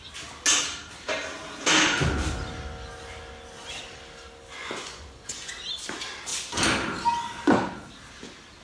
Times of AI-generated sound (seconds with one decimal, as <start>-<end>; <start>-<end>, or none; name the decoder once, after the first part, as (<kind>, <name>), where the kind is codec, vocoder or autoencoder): 4.6-5.5 (vocoder, Vocos)